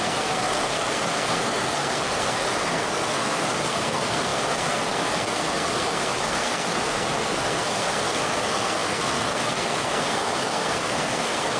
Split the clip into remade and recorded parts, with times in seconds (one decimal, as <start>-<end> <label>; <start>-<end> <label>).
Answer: 0.0-11.6 remade